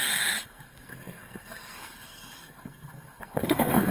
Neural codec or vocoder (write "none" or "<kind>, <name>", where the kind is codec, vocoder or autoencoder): codec, SNAC